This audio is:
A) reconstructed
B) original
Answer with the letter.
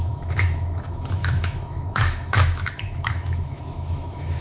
A